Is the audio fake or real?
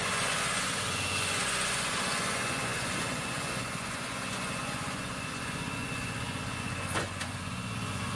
fake